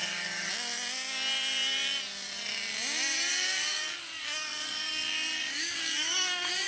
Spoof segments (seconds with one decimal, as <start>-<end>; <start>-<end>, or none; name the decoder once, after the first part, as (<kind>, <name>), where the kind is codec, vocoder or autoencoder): 0.0-0.5 (codec, DAC); 3.3-6.7